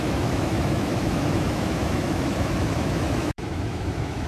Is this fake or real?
fake